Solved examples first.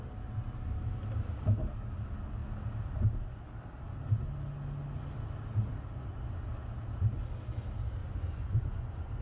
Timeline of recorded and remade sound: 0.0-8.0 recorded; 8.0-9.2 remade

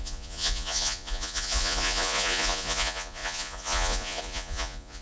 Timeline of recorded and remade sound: 0.0-5.0 remade

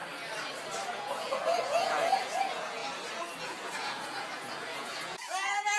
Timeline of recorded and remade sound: 0.0-0.9 recorded; 0.9-2.8 remade; 2.8-3.4 recorded; 3.4-5.8 remade

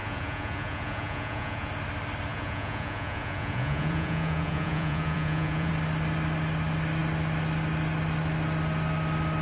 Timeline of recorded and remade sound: 0.0-1.7 remade; 1.7-2.3 recorded; 2.3-5.7 remade; 5.7-9.4 recorded